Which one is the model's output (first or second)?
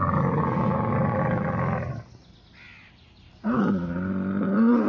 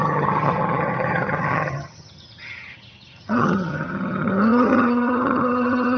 second